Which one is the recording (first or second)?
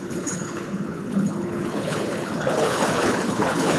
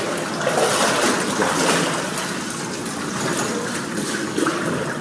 second